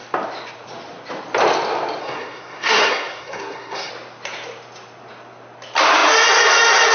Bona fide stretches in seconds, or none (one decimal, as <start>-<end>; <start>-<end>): 0.0-2.0; 3.9-6.9